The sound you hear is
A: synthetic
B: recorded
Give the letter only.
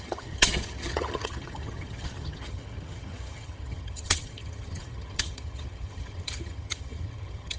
A